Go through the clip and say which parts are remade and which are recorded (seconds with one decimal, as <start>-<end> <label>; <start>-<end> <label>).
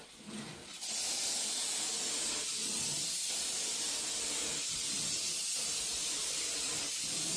0.0-3.0 recorded; 3.0-7.0 remade; 7.0-7.4 recorded